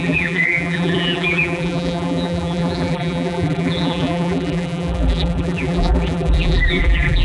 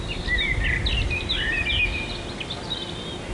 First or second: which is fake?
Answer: first